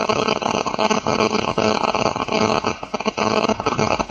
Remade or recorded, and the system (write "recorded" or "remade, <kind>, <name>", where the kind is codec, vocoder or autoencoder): remade, codec, HILCodec